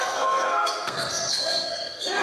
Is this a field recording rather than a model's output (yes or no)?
no